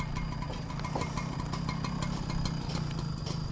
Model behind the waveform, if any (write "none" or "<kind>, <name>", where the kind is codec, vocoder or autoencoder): none